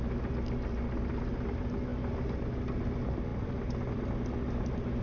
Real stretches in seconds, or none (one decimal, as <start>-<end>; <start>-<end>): 0.0-5.0